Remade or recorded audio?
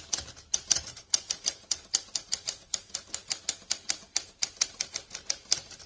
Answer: recorded